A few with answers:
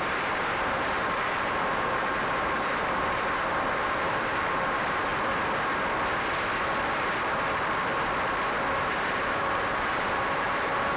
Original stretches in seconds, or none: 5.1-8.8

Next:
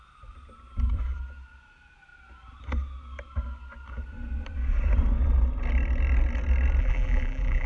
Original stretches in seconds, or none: 0.0-6.8

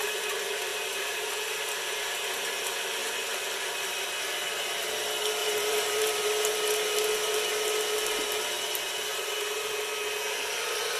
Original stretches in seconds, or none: 0.0-0.7; 1.3-5.4; 6.3-9.1; 9.7-11.0

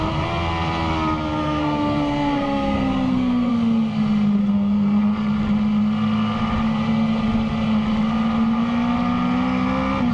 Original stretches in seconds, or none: 0.0-1.4; 3.5-4.4; 5.0-10.1

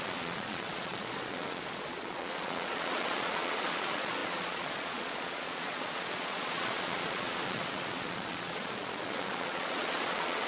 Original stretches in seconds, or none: none

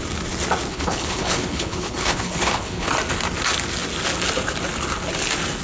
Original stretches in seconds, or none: 0.0-0.7; 2.9-5.6